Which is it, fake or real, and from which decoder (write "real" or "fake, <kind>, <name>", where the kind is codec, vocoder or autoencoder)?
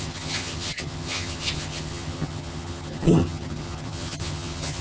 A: fake, vocoder, HiFi-GAN